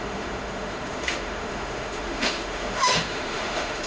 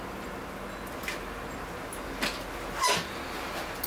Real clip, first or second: second